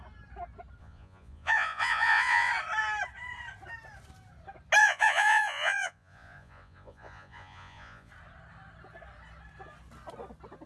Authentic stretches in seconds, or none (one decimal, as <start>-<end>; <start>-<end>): 0.0-0.8; 2.5-4.8; 8.1-10.7